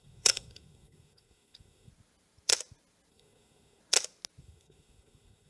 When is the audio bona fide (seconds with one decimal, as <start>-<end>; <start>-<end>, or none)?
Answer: 1.9-3.1; 3.8-4.4

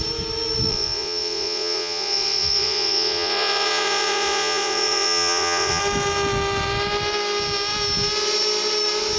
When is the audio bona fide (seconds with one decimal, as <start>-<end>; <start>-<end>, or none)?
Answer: 0.0-0.7; 5.8-9.2

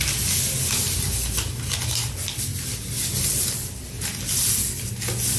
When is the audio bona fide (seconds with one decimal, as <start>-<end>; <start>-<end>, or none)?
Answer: 0.0-5.4

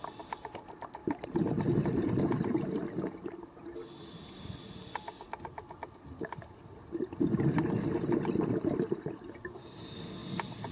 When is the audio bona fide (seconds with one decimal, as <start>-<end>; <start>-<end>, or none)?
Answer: 0.0-1.0; 2.0-10.7

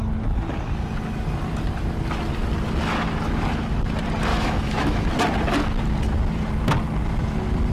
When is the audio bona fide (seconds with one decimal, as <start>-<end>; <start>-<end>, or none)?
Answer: 0.0-4.3; 5.1-7.7

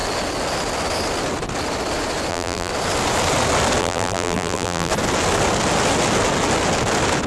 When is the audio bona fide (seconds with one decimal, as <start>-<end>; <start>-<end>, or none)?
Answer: 0.0-2.3; 2.7-3.8; 4.9-7.3